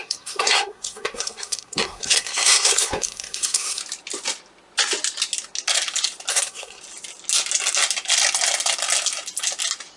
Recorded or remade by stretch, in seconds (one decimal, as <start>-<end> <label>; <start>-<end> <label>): 0.0-3.8 remade; 3.8-6.3 recorded; 6.3-6.8 remade; 6.8-10.0 recorded